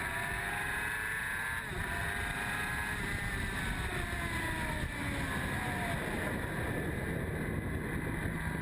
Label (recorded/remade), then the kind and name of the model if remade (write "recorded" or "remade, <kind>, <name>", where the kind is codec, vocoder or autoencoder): recorded